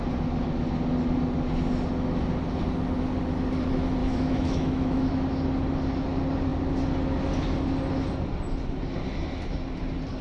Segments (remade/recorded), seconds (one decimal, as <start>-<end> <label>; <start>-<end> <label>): 0.0-4.0 recorded; 4.0-5.1 remade; 5.1-10.2 recorded